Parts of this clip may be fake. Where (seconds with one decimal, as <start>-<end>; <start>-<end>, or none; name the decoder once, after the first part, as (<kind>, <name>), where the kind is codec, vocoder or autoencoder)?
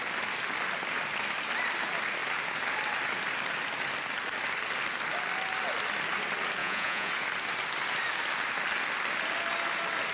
6.6-7.1 (vocoder, Vocos)